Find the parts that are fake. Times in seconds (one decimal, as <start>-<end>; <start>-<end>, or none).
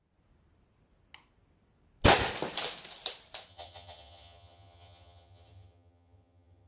3.5-6.7